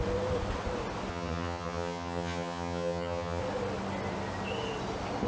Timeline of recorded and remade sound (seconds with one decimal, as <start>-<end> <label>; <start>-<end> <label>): 0.0-1.1 recorded; 1.1-3.4 remade; 3.4-5.3 recorded